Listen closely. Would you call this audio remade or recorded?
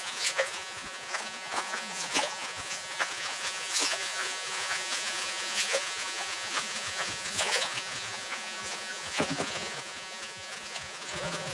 remade